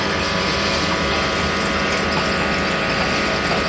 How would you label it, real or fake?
real